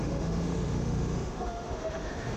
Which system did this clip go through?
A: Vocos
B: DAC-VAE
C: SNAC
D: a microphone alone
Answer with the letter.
B